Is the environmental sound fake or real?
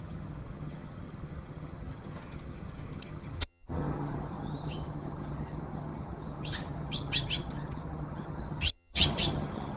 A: fake